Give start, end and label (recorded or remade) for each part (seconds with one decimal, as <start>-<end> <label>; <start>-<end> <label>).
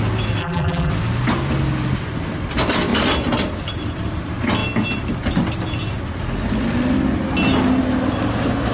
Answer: 0.0-0.4 recorded; 0.4-0.9 remade; 0.9-8.7 recorded